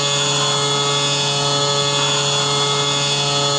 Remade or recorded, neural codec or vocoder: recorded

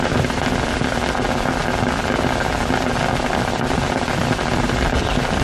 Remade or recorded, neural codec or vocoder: recorded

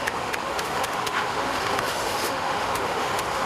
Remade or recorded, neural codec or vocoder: remade, autoencoder, DAC-VAE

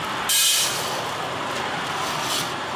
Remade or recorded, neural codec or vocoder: recorded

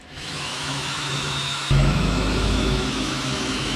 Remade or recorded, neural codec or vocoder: remade, autoencoder, DAC-VAE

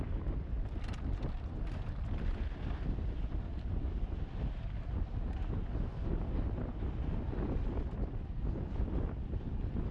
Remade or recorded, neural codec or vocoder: recorded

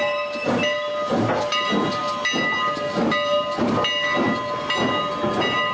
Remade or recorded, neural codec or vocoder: recorded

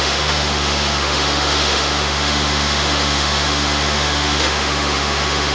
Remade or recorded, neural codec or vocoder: remade, autoencoder, DAC-VAE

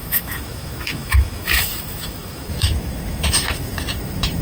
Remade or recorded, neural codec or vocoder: remade, autoencoder, DAC-VAE